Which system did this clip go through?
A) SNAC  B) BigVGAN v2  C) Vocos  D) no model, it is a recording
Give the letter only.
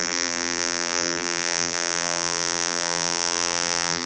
B